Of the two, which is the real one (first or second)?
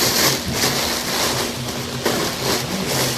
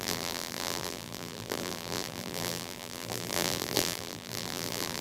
first